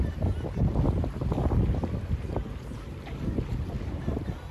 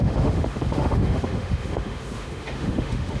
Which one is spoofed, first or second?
second